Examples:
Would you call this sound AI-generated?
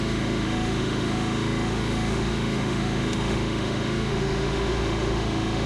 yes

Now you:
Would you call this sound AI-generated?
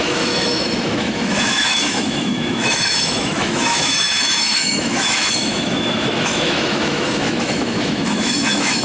yes